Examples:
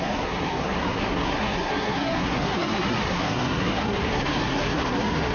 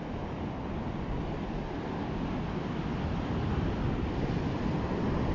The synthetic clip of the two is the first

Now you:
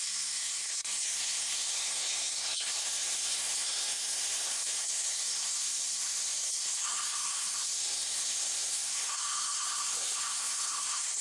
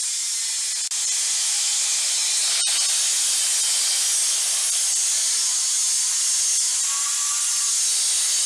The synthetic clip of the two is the first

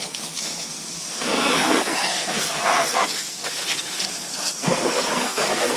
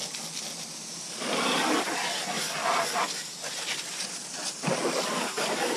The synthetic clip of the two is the first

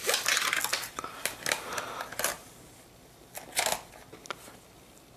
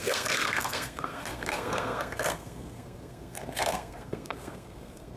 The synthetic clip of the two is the second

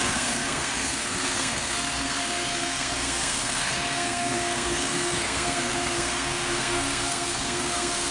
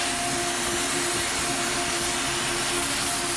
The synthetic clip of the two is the first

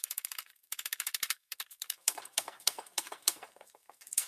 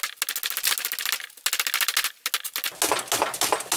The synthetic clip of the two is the first